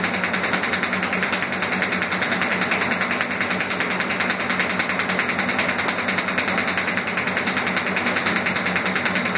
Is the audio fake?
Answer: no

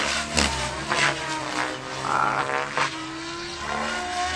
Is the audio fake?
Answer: no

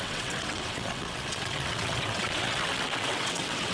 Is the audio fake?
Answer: yes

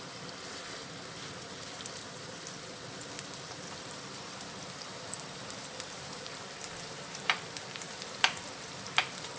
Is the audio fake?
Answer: yes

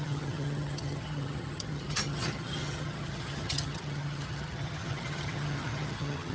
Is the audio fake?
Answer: yes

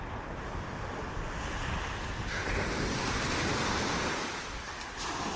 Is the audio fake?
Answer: no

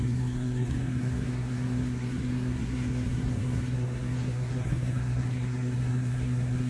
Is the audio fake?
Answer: yes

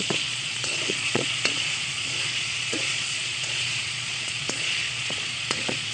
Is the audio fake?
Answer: yes